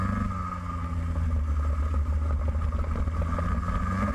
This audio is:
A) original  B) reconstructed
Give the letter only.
A